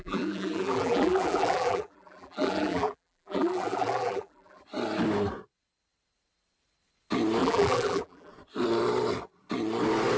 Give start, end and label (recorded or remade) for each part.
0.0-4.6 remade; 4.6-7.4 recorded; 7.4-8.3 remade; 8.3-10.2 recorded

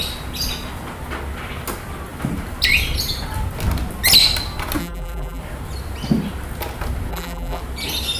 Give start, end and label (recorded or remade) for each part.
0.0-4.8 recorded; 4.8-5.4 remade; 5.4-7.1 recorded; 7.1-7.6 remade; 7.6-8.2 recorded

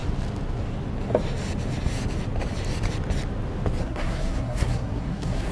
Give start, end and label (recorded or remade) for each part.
0.0-3.8 recorded; 3.8-5.5 remade

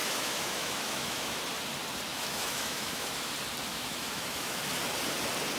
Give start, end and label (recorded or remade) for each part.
0.0-1.4 remade; 1.4-2.1 recorded; 2.1-3.3 remade; 3.3-3.7 recorded; 3.7-4.6 remade; 4.6-5.6 recorded

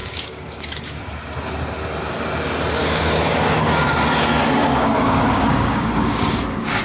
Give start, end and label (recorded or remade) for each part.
0.0-1.0 remade; 1.0-2.8 recorded; 2.8-3.9 remade; 3.9-4.6 recorded; 4.6-6.8 remade

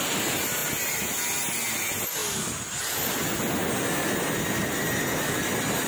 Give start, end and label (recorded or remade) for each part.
0.0-5.9 recorded

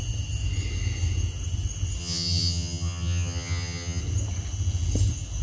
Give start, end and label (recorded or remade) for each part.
0.0-2.0 recorded; 2.0-4.0 remade; 4.0-5.4 recorded

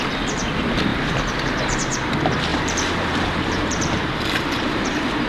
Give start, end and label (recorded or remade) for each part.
0.0-0.9 recorded; 0.9-2.1 remade; 2.1-2.5 recorded; 2.5-5.3 remade